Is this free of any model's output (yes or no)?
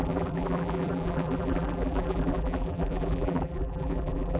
no